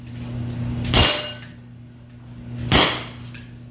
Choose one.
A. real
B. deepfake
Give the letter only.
A